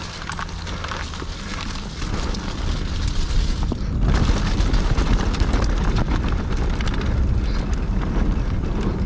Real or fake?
real